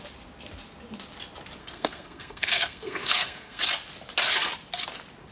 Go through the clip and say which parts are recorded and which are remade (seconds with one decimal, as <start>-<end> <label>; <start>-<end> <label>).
0.0-1.6 recorded; 1.6-3.6 remade; 3.6-5.3 recorded

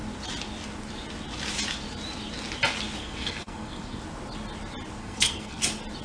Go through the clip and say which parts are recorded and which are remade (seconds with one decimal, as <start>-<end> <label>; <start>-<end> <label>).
0.0-3.0 recorded; 3.0-4.0 remade; 4.0-5.0 recorded; 5.0-5.6 remade; 5.6-6.0 recorded